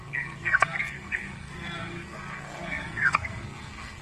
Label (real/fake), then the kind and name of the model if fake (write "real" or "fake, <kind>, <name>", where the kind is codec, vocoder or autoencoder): fake, codec, SNAC